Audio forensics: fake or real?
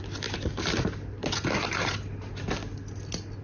real